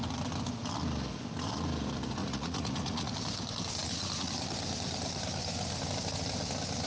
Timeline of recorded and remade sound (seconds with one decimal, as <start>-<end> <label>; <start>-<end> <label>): 0.0-2.2 recorded; 2.2-3.1 remade; 3.1-3.8 recorded; 3.8-4.3 remade; 4.3-6.9 recorded